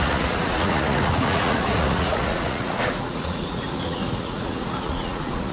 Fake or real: fake